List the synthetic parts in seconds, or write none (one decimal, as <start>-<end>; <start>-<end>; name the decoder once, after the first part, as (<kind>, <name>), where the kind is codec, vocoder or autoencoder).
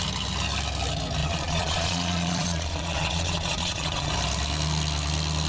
1.2-4.1 (vocoder, Vocos)